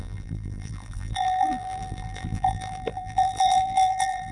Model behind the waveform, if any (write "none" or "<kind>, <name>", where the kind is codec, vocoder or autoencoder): vocoder, BigVGAN v2